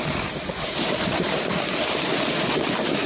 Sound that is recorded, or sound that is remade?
recorded